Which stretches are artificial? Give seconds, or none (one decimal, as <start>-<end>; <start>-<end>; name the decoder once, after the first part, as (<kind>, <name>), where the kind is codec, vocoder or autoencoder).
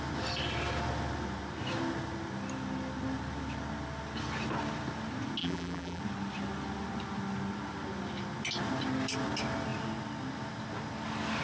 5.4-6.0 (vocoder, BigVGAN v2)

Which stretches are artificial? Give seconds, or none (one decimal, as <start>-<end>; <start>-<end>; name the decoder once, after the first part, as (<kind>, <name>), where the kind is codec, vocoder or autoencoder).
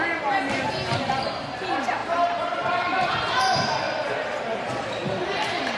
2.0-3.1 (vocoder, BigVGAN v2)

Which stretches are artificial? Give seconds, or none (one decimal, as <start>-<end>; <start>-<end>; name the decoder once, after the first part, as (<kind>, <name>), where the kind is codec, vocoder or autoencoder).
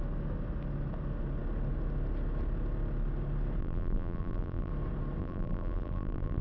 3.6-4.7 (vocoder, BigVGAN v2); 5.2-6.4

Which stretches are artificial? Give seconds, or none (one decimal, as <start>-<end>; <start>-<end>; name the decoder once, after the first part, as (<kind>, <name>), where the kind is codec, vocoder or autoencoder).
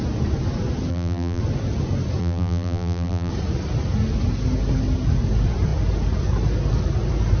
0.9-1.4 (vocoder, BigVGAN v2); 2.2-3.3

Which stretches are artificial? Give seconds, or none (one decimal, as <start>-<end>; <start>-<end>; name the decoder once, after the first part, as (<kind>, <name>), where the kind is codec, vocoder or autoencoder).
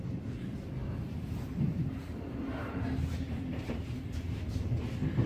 0.8-4.0 (vocoder, BigVGAN v2)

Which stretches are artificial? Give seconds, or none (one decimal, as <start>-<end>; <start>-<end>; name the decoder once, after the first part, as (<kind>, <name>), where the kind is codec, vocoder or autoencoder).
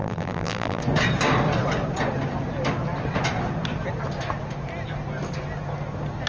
0.0-0.8 (vocoder, BigVGAN v2)